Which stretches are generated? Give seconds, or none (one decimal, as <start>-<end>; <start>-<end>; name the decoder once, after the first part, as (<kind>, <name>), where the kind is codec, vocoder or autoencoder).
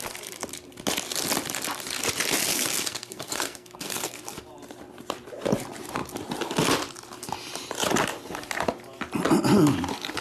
2.5-4.4 (codec, SNAC)